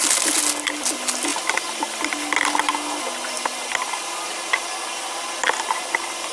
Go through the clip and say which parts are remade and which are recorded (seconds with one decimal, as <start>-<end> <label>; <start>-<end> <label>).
0.0-6.3 recorded

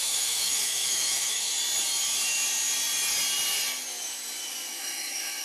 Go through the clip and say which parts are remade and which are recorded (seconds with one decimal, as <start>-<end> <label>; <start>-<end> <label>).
0.0-1.5 remade; 1.5-4.7 recorded; 4.7-5.4 remade

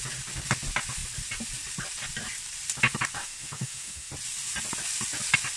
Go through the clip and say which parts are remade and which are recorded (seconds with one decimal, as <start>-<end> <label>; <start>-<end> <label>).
0.0-3.2 recorded; 3.2-4.1 remade; 4.1-5.6 recorded

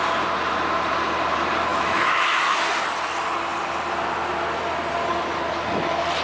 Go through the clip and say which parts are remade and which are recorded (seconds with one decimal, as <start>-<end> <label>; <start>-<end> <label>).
0.0-1.7 recorded; 1.7-2.7 remade; 2.7-6.2 recorded

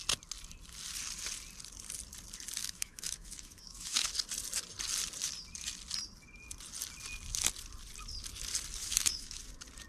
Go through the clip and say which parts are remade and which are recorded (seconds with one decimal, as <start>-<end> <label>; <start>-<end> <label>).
0.0-2.6 recorded; 2.6-4.1 remade; 4.1-8.8 recorded; 8.8-9.4 remade; 9.4-9.9 recorded

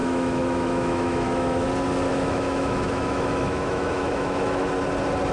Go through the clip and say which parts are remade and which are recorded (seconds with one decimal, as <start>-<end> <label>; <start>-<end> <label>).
0.0-1.7 remade; 1.7-2.1 recorded; 2.1-4.7 remade; 4.7-5.3 recorded

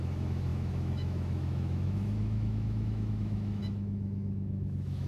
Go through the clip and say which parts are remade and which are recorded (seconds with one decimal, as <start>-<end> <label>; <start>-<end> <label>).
0.0-5.1 remade